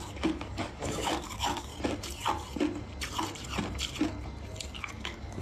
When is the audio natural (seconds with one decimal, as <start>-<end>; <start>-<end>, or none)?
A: 1.7-4.9